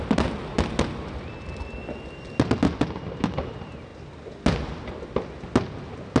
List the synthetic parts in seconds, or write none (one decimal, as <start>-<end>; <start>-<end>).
none